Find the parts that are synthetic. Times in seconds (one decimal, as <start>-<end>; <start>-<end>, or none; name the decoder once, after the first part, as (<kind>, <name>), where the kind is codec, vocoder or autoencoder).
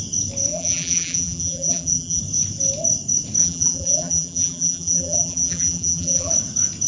0.5-2.2 (vocoder, BigVGAN v2); 3.4-6.3